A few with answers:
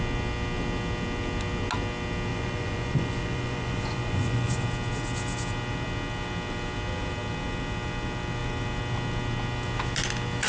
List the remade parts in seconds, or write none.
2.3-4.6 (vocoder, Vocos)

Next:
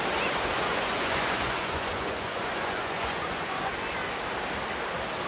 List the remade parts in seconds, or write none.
0.5-3.7 (vocoder, Vocos)

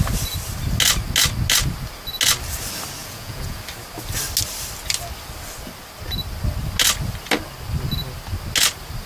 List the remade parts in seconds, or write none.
3.0-3.6 (vocoder, Vocos)

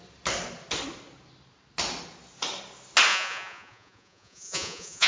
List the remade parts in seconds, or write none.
3.1-5.1 (vocoder, Vocos)

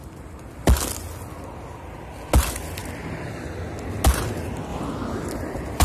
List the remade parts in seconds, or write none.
none

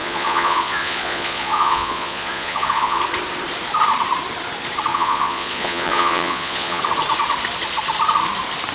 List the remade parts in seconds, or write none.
0.0-3.0 (vocoder, Vocos); 4.9-6.8

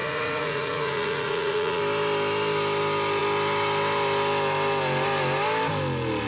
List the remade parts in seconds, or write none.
0.0-1.8 (vocoder, Vocos)

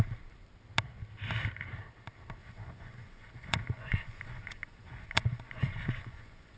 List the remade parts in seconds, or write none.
2.4-6.6 (vocoder, Vocos)